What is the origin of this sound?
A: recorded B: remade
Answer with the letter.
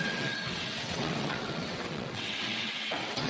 B